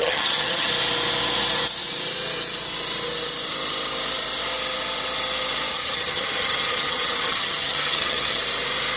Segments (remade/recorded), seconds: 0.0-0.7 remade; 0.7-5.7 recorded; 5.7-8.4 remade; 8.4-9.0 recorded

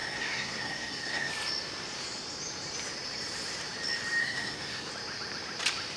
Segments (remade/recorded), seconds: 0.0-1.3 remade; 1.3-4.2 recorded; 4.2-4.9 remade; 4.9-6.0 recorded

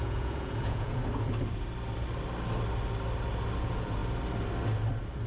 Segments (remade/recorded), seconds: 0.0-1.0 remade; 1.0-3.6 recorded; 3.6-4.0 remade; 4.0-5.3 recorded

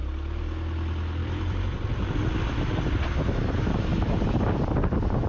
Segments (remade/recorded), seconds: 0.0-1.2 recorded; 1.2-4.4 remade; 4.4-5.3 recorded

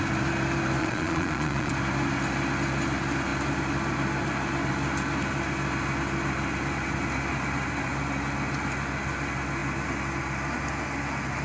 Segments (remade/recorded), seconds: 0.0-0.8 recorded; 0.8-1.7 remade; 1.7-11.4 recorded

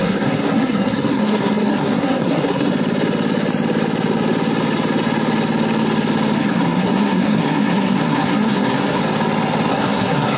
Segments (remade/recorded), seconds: 0.0-2.7 remade; 2.7-6.4 recorded; 6.4-9.0 remade; 9.0-9.7 recorded; 9.7-10.4 remade

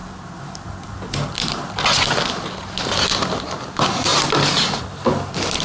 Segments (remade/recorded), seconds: 0.0-5.6 recorded